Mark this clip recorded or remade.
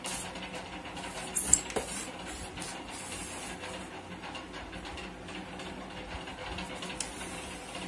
recorded